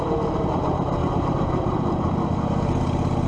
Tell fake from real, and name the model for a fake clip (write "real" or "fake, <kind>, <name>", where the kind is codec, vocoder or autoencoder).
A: real